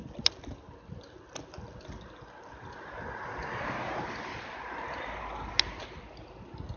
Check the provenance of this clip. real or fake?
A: real